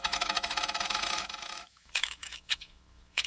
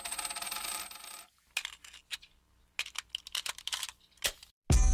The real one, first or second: second